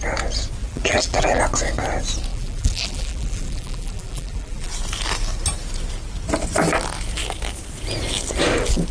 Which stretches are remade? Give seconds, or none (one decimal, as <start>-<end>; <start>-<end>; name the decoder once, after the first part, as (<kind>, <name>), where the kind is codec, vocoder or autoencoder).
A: 0.6-1.4 (vocoder, BigVGAN v2); 2.3-4.7